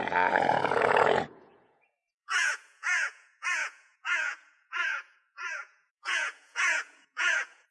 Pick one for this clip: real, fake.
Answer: fake